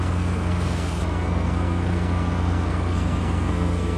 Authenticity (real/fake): fake